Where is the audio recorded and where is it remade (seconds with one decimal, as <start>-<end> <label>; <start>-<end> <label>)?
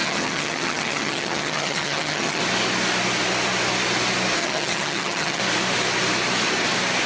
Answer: 0.0-2.4 remade; 2.4-4.4 recorded; 4.4-5.4 remade; 5.4-7.1 recorded